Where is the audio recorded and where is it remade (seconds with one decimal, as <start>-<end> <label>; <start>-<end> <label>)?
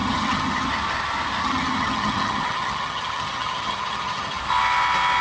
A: 0.0-0.7 remade; 0.7-1.4 recorded; 1.4-4.4 remade; 4.4-5.2 recorded